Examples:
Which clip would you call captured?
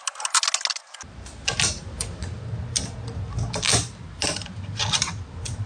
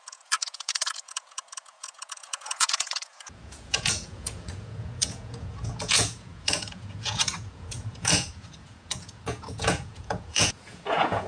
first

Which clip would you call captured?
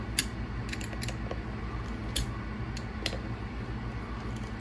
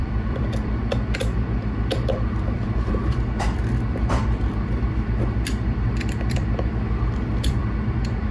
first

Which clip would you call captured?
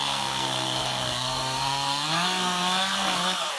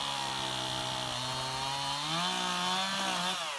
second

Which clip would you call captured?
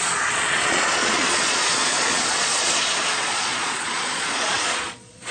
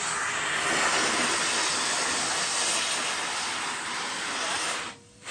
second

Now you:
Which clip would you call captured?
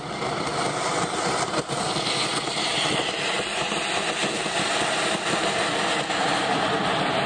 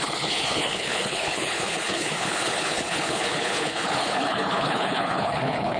first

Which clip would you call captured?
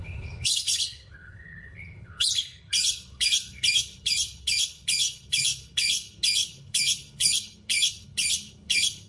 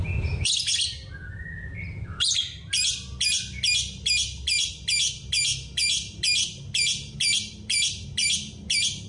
second